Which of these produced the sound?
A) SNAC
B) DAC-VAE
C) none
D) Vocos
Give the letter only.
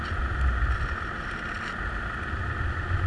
C